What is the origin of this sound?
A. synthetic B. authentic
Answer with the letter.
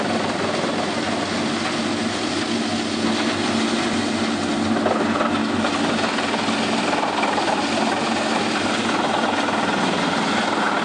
B